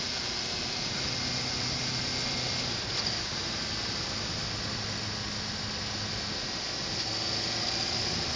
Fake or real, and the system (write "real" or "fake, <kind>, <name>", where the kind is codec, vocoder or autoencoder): real